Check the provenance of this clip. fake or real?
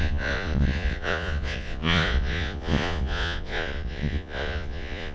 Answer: fake